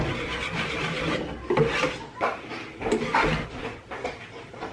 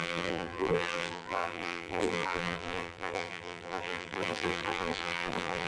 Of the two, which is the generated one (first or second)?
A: second